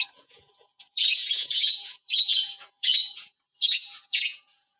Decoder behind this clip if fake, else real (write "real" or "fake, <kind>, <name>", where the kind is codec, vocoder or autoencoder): fake, vocoder, Vocos